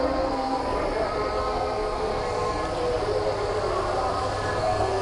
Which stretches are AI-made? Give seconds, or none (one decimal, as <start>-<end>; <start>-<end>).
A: 0.0-0.6; 1.4-2.2; 4.6-5.0